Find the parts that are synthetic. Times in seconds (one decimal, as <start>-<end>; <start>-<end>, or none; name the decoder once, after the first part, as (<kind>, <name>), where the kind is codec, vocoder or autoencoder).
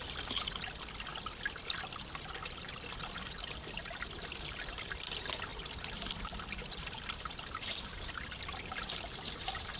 1.1-3.9 (vocoder, BigVGAN v2); 5.5-6.5